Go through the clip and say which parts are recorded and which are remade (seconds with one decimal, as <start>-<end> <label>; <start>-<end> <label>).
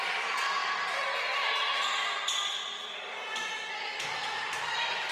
0.0-0.6 remade; 0.6-3.7 recorded; 3.7-5.1 remade